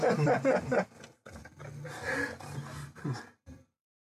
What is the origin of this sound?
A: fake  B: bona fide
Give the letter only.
A